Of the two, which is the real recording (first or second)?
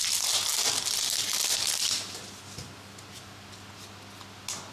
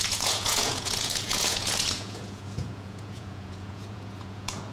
first